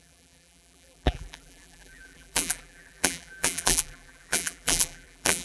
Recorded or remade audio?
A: remade